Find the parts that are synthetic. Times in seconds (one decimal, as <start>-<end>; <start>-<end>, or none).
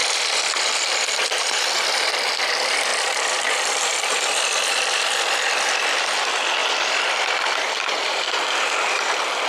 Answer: 0.0-9.5